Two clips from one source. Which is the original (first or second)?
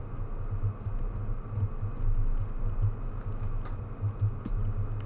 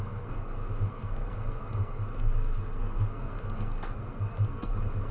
first